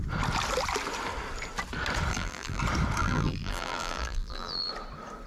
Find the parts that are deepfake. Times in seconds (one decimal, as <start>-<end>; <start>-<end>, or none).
2.1-2.6; 3.0-4.7